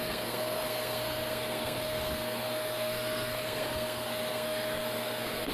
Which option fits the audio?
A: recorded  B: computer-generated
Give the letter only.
B